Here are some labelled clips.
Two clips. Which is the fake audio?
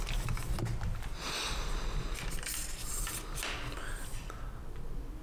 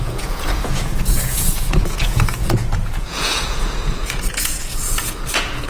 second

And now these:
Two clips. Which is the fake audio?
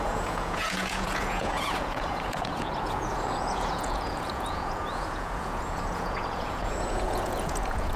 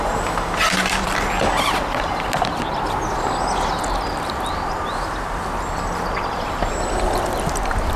first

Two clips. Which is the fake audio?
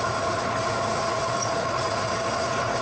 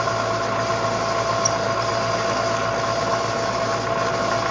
first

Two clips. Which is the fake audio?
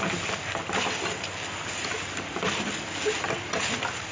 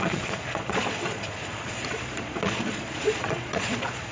second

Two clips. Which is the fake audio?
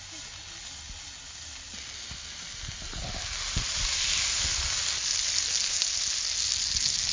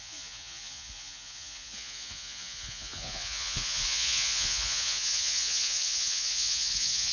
second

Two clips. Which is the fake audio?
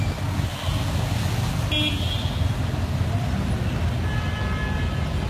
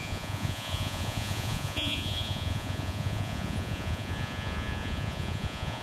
second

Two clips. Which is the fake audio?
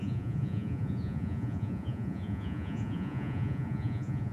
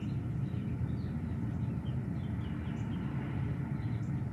first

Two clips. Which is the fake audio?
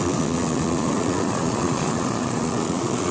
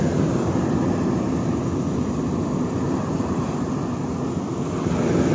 first